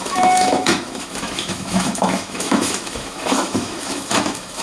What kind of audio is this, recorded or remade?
remade